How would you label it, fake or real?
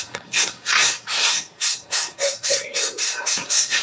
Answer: fake